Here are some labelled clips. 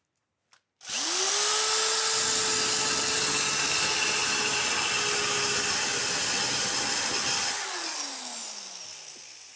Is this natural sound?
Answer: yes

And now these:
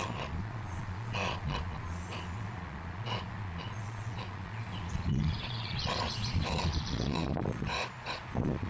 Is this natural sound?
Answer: no